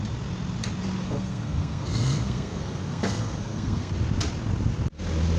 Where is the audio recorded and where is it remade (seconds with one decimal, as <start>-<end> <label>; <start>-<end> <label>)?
0.0-1.0 recorded; 1.0-3.9 remade; 3.9-5.4 recorded